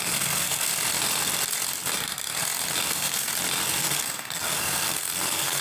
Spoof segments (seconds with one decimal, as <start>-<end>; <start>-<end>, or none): 0.0-0.7; 2.9-3.3; 3.8-5.6